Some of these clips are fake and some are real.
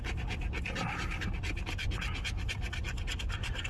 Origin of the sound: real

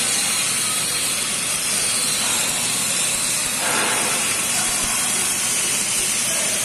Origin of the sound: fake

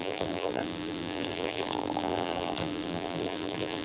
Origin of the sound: fake